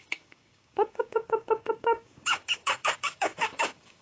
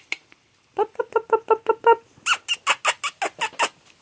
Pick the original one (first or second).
second